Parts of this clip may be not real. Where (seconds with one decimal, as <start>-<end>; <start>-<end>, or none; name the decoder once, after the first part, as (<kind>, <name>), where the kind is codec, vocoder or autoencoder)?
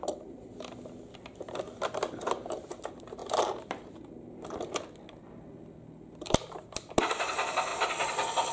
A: none